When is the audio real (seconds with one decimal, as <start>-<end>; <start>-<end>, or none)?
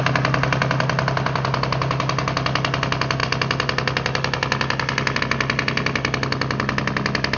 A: 0.0-7.4